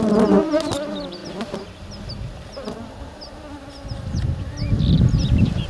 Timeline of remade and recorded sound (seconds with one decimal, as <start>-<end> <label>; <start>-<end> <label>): 0.0-5.7 recorded